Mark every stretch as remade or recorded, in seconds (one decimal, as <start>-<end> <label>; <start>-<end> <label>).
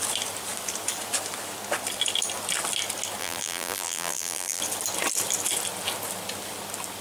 0.0-3.2 recorded; 3.2-4.6 remade; 4.6-7.0 recorded